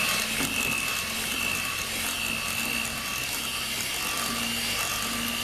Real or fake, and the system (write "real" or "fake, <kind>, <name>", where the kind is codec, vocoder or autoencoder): real